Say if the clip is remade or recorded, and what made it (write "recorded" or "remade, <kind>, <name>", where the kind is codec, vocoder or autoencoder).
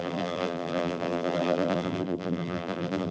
remade, vocoder, BigVGAN v2